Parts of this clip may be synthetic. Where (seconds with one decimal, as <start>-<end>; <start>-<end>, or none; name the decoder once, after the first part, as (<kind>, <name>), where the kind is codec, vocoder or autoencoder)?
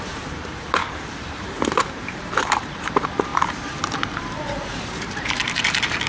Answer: 0.0-6.1 (vocoder, BigVGAN v2)